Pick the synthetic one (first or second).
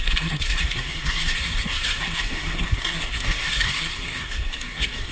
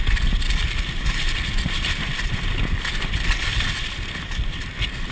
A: first